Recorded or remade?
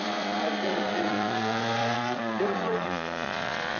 remade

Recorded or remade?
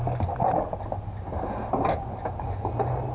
recorded